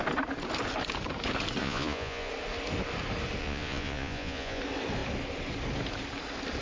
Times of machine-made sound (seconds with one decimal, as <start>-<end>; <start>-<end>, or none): 1.6-2.3; 3.4-4.6